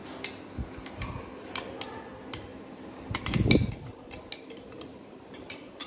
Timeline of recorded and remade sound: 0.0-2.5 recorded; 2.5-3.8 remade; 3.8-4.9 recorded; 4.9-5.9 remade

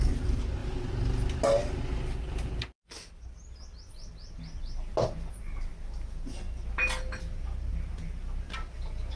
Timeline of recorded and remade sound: 0.0-9.2 recorded

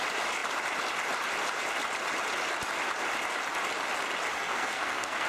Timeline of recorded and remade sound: 0.0-4.3 recorded; 4.3-5.3 remade